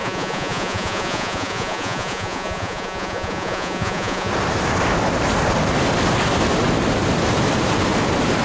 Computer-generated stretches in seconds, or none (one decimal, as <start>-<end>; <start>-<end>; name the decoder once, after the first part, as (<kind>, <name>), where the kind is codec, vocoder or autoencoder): 0.0-4.3 (vocoder, Vocos)